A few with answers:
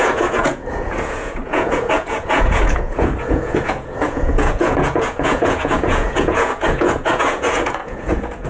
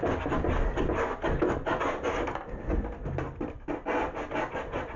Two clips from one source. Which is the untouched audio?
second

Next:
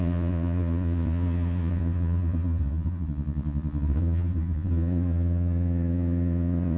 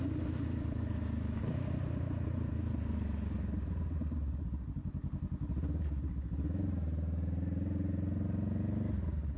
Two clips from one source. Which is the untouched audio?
second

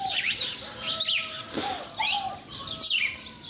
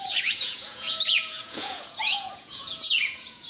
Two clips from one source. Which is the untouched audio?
first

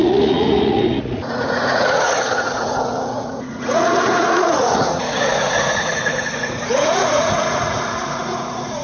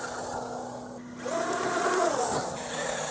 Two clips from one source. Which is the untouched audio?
second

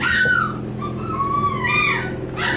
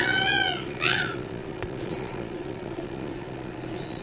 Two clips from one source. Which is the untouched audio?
first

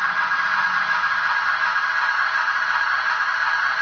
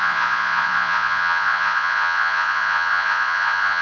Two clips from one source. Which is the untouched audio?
first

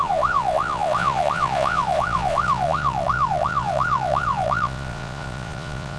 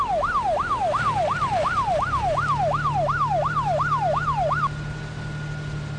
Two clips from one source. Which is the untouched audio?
second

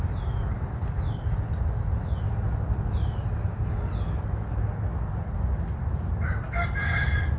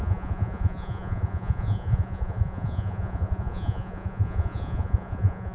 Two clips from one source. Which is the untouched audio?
first